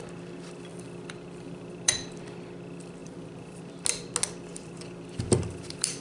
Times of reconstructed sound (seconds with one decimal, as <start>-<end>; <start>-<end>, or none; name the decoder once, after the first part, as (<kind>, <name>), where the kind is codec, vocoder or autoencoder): 0.7-2.1 (vocoder, BigVGAN v2); 3.0-3.7; 4.5-6.0